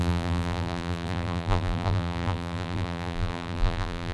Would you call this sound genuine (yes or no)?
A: no